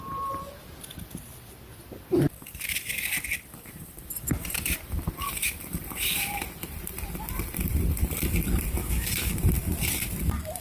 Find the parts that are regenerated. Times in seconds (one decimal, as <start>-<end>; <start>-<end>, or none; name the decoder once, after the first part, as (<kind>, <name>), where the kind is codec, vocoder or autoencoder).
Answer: 8.8-9.4 (autoencoder, DAC-VAE)